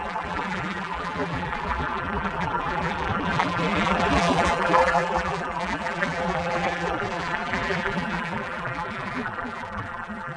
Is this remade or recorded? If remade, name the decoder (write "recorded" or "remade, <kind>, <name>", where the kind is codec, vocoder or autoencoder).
remade, vocoder, BigVGAN v2